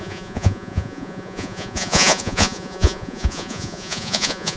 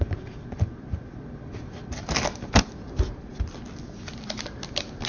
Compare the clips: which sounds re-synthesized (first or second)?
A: first